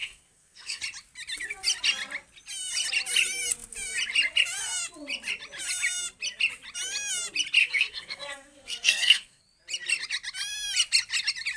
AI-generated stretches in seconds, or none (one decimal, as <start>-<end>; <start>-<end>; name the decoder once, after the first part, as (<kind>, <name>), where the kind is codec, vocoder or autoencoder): 0.0-0.8 (codec, SNAC); 7.6-9.4